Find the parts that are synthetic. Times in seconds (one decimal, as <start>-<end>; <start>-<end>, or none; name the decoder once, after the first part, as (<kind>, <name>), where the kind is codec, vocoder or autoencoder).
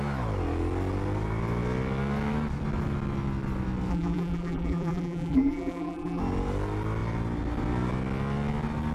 3.9-6.2 (vocoder, BigVGAN v2)